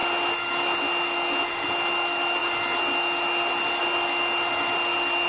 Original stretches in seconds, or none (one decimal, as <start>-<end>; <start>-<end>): 0.0-5.3